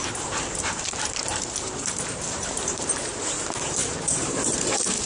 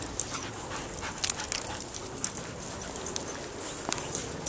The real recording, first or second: second